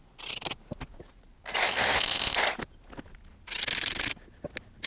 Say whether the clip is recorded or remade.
recorded